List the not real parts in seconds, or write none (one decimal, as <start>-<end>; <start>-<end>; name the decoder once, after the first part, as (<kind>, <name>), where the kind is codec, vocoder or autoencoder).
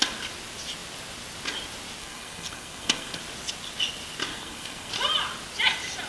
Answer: 2.0-3.2 (codec, SNAC); 4.3-4.9